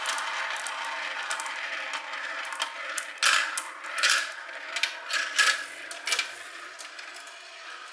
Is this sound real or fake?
real